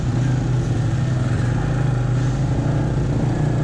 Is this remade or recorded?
recorded